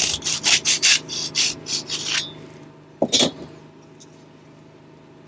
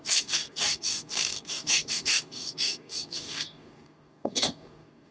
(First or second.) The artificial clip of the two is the second